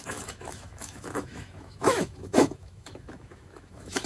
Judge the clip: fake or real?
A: fake